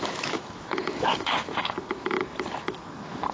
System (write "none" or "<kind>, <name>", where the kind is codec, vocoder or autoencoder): autoencoder, DAC-VAE